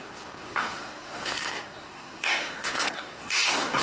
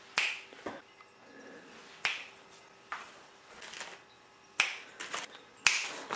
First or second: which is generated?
first